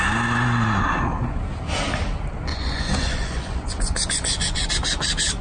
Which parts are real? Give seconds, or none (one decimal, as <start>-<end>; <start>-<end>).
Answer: 0.0-2.5; 4.7-5.4